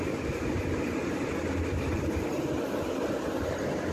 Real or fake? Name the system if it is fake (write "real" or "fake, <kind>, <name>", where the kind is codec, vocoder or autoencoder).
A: real